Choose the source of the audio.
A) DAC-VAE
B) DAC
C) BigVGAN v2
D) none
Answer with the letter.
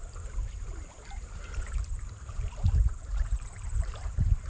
C